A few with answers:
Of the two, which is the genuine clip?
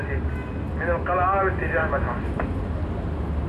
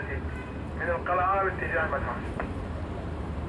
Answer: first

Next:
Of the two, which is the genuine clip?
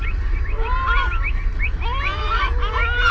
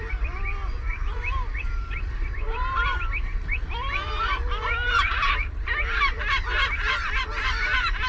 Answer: first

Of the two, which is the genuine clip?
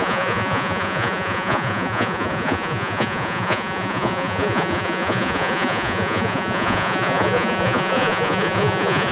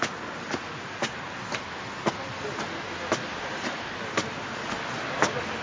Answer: second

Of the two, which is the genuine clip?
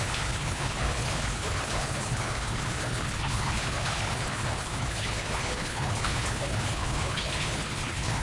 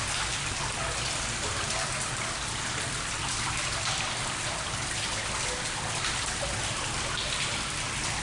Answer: second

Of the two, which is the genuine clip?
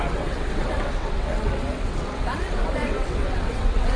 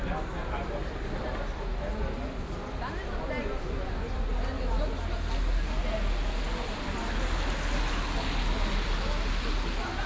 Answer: second